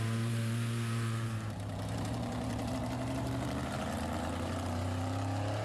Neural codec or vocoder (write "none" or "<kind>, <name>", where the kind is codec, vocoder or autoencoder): vocoder, BigVGAN v2